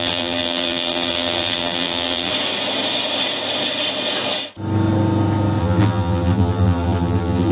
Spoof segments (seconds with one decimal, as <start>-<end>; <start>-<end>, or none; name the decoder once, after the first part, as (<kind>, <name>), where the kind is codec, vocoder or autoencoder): 0.0-2.3 (vocoder, BigVGAN v2); 5.6-7.5